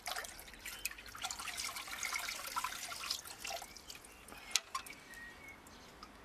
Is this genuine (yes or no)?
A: yes